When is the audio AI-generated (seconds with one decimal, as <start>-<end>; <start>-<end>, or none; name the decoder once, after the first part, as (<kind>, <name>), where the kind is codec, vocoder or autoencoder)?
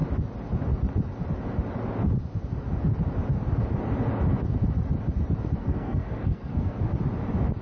5.6-6.9 (codec, SNAC)